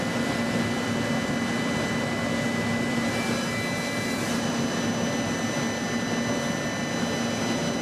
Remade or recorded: recorded